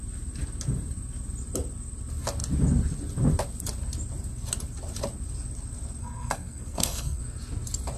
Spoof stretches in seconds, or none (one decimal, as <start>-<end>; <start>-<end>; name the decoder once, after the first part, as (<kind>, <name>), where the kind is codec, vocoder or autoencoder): 6.0-7.2 (codec, SNAC)